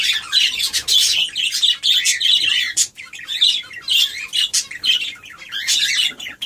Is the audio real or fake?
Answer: real